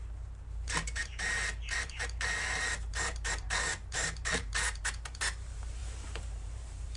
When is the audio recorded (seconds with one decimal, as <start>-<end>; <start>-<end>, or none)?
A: none